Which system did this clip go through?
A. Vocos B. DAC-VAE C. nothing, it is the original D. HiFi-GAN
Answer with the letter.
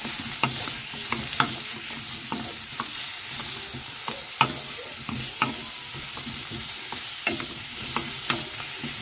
C